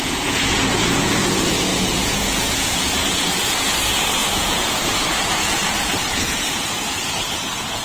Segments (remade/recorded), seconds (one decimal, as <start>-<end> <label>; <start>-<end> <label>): 0.0-7.8 remade